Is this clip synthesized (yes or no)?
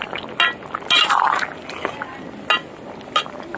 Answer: no